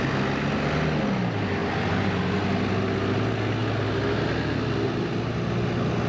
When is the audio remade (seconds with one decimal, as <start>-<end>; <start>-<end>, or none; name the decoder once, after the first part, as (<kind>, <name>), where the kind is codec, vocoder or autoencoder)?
none

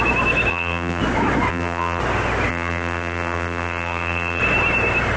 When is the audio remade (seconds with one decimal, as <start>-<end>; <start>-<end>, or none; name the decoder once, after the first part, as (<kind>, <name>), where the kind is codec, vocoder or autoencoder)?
0.5-1.0 (vocoder, BigVGAN v2); 1.5-2.0; 2.5-4.4